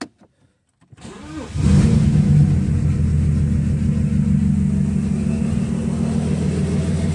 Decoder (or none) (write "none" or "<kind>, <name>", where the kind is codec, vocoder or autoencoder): none